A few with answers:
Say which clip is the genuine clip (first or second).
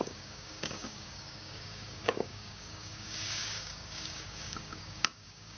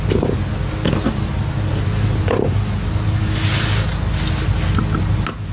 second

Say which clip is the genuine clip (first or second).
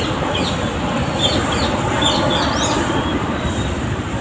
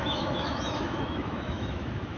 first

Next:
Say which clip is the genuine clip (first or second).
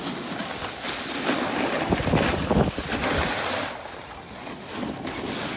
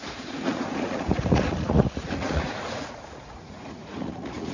first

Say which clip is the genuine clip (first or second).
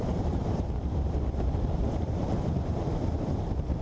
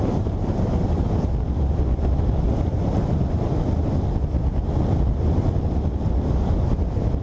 second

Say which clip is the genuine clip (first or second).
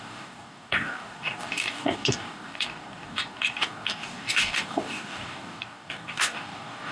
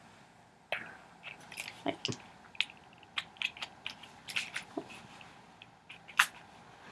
second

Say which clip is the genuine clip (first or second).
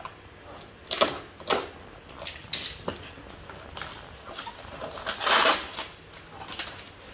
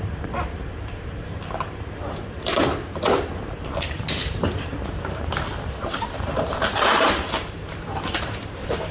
first